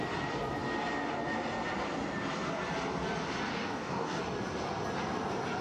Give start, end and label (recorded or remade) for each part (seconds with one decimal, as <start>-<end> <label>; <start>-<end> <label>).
0.0-3.5 recorded; 3.5-4.2 remade; 4.2-5.6 recorded